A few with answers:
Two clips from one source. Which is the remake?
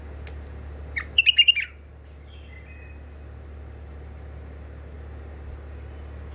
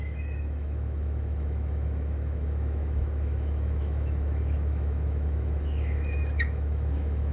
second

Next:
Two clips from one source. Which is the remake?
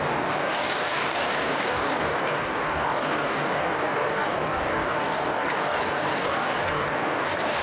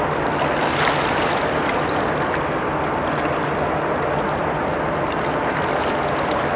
first